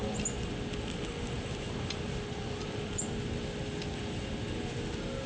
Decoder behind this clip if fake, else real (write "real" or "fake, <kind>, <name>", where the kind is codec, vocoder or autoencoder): real